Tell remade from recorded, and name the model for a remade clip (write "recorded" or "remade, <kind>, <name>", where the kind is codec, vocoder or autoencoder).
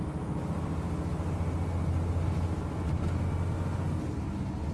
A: recorded